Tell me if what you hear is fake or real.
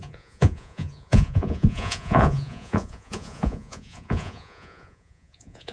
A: fake